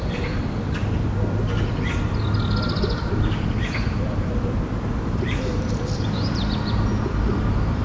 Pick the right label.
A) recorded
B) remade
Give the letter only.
B